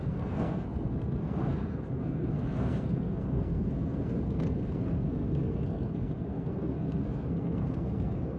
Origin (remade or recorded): remade